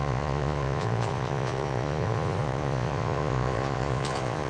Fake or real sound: fake